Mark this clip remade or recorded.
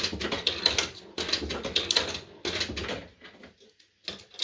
recorded